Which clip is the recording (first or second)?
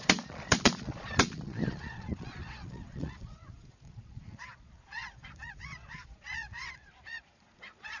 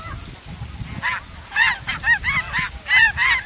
second